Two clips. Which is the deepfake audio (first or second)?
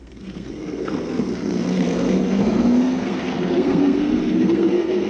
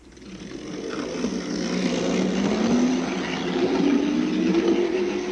first